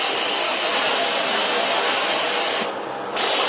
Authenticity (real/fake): real